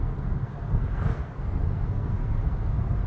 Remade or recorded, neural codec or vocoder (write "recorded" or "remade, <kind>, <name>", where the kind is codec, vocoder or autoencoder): remade, codec, SNAC